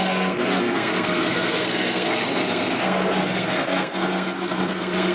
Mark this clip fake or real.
fake